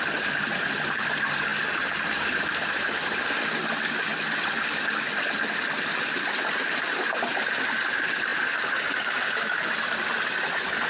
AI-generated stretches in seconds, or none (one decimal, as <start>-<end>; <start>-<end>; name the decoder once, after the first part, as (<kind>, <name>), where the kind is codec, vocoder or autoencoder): 1.5-2.9 (vocoder, BigVGAN v2)